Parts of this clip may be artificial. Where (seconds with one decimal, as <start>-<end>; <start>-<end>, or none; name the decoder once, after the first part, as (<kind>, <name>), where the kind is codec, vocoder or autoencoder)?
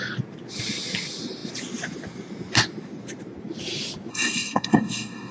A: 4.1-5.3 (codec, SNAC)